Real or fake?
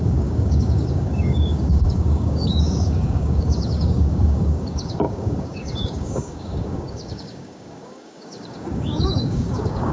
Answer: fake